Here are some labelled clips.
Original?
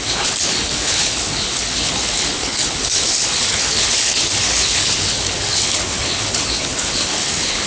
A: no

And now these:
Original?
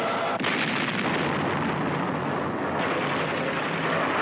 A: yes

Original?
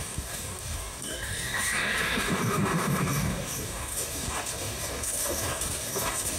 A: no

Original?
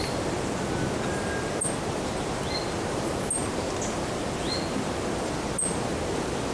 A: yes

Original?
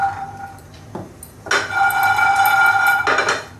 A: yes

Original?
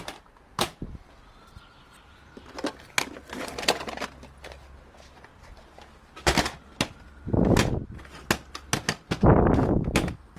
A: yes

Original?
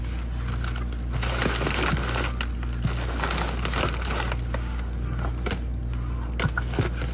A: yes